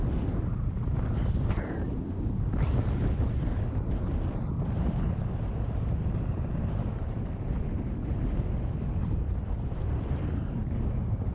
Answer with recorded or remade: recorded